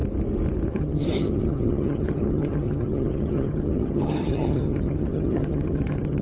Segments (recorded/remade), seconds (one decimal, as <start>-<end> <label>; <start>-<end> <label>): 0.0-0.7 recorded; 0.7-6.2 remade